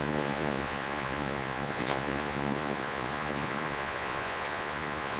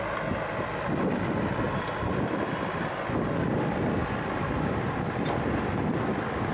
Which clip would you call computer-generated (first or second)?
first